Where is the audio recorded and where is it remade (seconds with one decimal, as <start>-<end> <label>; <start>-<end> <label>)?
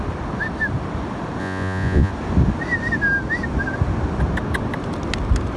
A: 0.0-1.4 recorded; 1.4-2.1 remade; 2.1-5.6 recorded